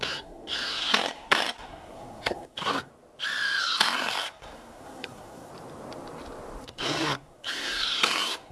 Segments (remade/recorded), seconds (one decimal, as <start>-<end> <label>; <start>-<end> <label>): 0.0-2.9 remade; 2.9-3.6 recorded; 3.6-5.5 remade; 5.5-6.6 recorded; 6.6-8.5 remade